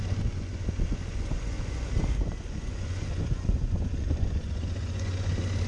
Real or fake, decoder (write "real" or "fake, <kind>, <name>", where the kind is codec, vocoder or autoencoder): fake, vocoder, Vocos